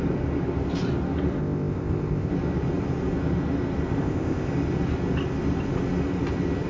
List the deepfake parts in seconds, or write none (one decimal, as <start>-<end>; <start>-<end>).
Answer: 1.4-2.3; 4.0-4.5